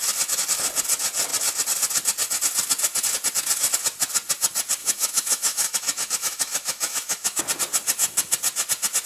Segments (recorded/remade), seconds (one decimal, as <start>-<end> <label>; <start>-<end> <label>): 0.0-4.8 recorded; 4.8-7.4 remade; 7.4-9.1 recorded

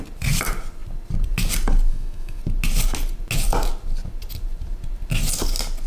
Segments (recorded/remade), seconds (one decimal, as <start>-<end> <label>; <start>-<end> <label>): 0.0-1.9 recorded; 1.9-2.4 remade; 2.4-5.9 recorded

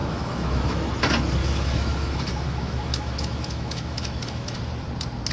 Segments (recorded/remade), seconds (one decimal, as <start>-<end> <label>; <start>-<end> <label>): 0.0-0.9 remade; 0.9-1.4 recorded; 1.4-4.6 remade; 4.6-5.3 recorded